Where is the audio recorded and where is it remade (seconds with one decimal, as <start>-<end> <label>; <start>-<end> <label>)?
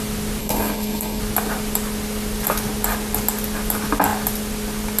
0.0-0.4 recorded; 0.4-1.2 remade; 1.2-5.0 recorded